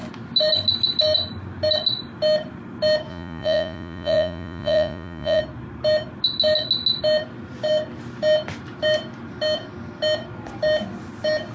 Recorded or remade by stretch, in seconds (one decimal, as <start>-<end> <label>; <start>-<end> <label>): 0.0-3.1 recorded; 3.1-5.4 remade; 5.4-11.5 recorded